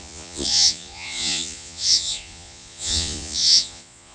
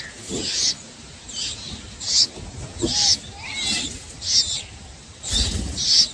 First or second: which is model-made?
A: first